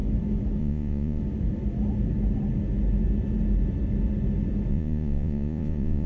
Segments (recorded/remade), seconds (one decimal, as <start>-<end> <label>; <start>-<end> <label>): 0.0-0.6 recorded; 0.6-1.2 remade; 1.2-4.7 recorded; 4.7-6.1 remade